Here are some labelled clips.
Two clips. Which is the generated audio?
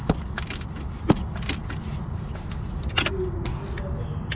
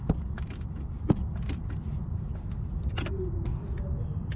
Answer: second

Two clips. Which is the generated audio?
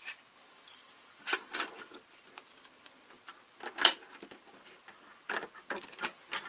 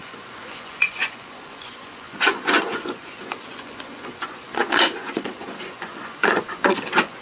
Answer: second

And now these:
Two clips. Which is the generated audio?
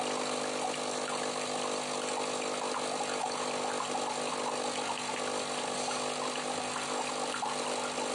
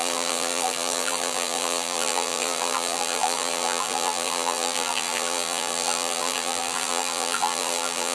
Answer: second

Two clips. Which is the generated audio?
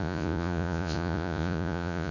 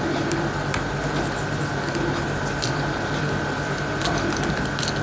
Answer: first